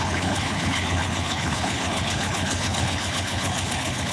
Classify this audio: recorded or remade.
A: remade